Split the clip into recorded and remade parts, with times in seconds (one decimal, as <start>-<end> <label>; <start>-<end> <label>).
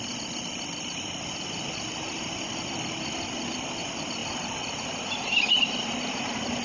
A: 0.0-6.6 recorded